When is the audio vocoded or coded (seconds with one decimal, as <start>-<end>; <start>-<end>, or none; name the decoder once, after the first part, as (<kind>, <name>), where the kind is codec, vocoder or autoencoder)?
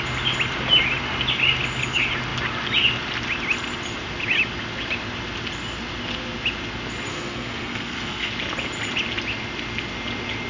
7.1-8.3 (codec, SNAC)